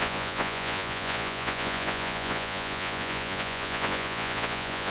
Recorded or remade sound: remade